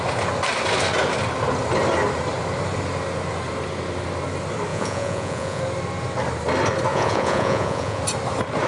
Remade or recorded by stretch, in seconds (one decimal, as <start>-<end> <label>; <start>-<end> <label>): 0.0-4.7 recorded; 4.7-5.6 remade; 5.6-6.9 recorded; 6.9-8.0 remade; 8.0-8.7 recorded